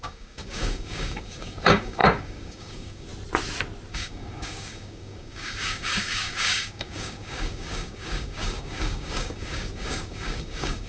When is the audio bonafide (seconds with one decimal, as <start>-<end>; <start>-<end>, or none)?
3.1-3.9